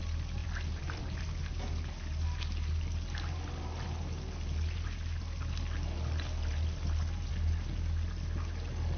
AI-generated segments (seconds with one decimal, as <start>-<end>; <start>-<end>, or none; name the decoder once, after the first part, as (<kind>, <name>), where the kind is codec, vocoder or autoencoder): 0.4-1.0 (vocoder, BigVGAN v2)